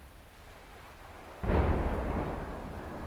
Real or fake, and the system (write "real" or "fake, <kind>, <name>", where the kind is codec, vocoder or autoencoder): real